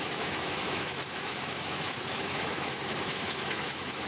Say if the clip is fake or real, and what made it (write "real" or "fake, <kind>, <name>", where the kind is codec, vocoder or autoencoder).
fake, autoencoder, DAC-VAE